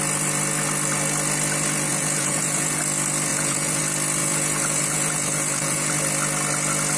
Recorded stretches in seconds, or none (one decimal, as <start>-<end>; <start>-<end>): 0.0-1.9; 2.8-3.3; 3.8-4.2; 5.9-7.0